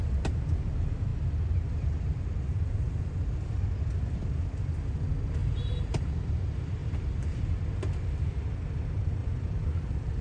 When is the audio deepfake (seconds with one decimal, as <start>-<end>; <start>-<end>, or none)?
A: 5.4-6.1; 6.8-7.4; 9.2-10.2